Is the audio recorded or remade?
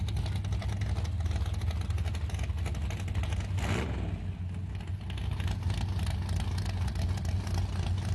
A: recorded